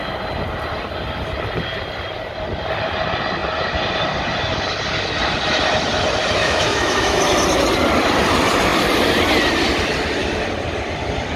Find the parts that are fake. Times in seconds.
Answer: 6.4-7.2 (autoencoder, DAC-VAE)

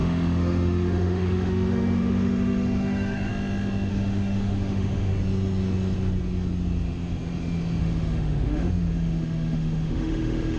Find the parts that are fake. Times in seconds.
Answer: 0.0-3.3 (autoencoder, DAC-VAE); 3.9-5.1; 7.8-10.6

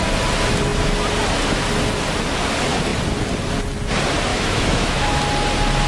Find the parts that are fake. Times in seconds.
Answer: 4.3-5.2 (autoencoder, DAC-VAE)

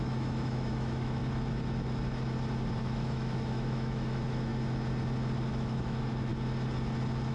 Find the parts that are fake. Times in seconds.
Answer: 0.0-1.2 (autoencoder, DAC-VAE); 2.8-4.5; 5.5-6.3